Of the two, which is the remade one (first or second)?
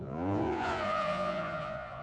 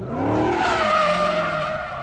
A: first